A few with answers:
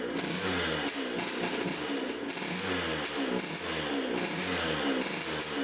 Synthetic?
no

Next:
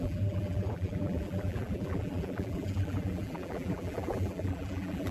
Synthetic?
yes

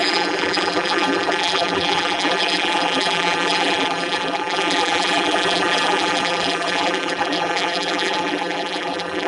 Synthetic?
yes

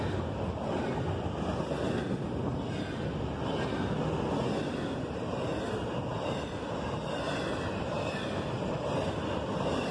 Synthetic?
no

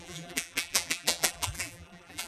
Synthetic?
yes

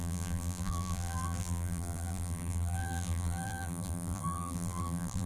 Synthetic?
yes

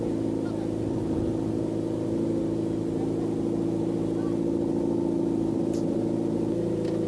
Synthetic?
yes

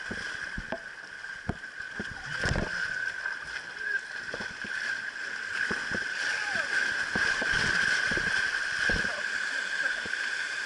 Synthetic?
no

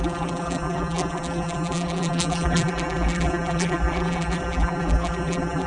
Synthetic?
yes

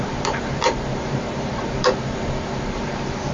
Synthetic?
yes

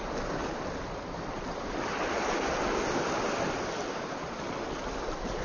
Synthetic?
no